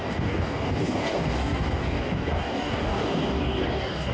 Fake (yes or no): yes